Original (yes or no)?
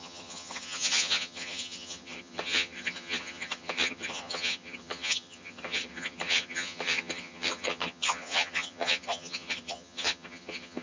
no